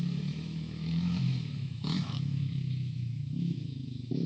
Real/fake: fake